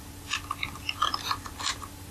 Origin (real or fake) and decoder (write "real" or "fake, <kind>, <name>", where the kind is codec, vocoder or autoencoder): fake, vocoder, BigVGAN v2